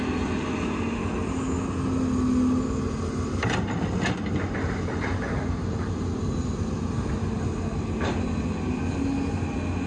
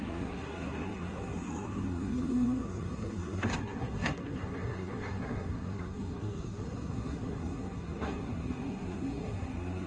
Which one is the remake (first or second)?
second